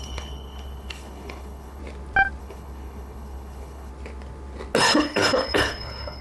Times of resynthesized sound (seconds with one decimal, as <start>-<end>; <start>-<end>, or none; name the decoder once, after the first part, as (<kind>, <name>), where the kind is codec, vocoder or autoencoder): 0.0-1.8 (codec, HILCodec); 2.4-3.9; 4.8-6.2